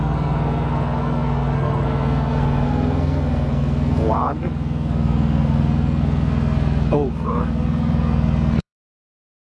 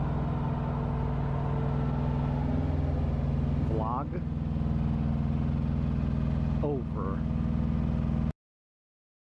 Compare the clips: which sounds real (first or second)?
second